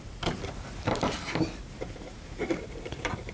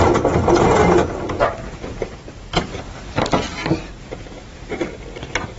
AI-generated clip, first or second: first